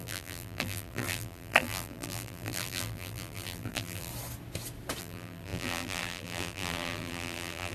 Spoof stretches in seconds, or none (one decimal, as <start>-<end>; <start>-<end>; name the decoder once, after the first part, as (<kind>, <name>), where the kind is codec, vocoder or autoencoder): 0.0-4.1 (vocoder, BigVGAN v2); 5.0-7.7